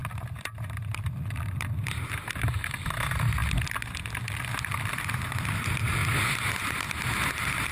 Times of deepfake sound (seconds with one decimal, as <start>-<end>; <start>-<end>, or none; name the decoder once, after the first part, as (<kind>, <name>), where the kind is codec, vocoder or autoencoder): 0.0-3.4 (vocoder, BigVGAN v2); 4.9-6.0; 7.3-7.7